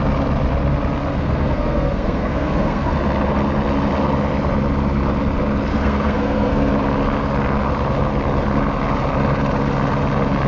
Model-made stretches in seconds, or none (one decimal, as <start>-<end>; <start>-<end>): 1.1-2.9; 5.7-6.7